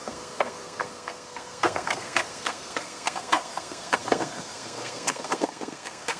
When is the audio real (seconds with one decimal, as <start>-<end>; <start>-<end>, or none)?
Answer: none